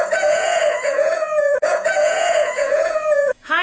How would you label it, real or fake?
fake